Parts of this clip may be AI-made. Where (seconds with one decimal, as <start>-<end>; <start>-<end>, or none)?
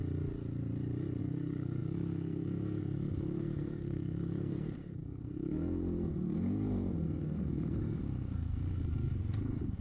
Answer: 1.2-9.8